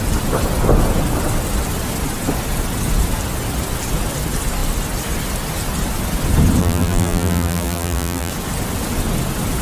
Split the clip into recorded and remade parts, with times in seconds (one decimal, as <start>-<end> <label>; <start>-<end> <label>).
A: 0.0-6.6 recorded; 6.6-8.3 remade; 8.3-9.6 recorded

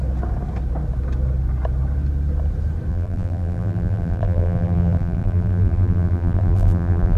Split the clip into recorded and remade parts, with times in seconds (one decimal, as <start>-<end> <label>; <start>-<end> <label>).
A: 0.0-2.9 recorded; 2.9-7.2 remade

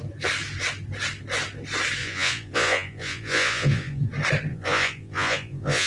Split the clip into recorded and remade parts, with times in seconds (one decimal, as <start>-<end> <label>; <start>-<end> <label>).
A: 0.0-2.0 recorded; 2.0-4.0 remade; 4.0-4.5 recorded; 4.5-5.9 remade

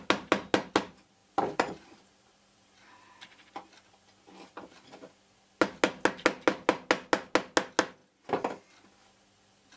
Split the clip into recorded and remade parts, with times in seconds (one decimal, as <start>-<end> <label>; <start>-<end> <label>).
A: 0.0-1.2 recorded; 1.2-2.9 remade; 2.9-9.8 recorded

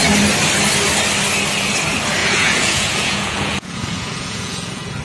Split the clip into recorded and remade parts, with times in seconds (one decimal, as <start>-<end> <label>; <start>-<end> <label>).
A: 0.0-2.2 recorded; 2.2-5.0 remade